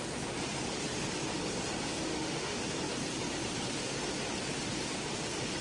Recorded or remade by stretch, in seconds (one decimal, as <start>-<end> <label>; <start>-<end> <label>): 0.0-2.1 recorded; 2.1-2.6 remade; 2.6-5.6 recorded